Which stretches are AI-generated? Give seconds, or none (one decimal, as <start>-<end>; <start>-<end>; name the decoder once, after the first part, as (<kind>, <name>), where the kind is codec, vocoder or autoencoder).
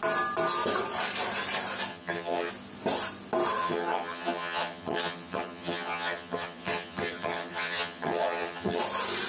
1.9-2.5 (vocoder, HiFi-GAN); 3.6-8.8